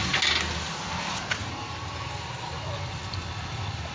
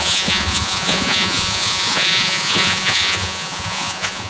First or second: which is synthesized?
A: second